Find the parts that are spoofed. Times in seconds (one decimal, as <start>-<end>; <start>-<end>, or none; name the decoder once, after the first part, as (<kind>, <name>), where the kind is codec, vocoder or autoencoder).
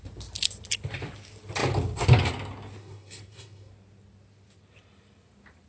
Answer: 2.8-3.7 (codec, SNAC)